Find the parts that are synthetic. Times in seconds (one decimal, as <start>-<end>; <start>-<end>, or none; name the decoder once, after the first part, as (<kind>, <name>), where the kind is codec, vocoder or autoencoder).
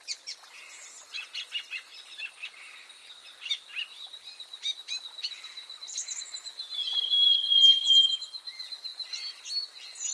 none